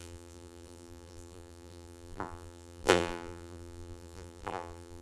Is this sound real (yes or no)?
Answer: no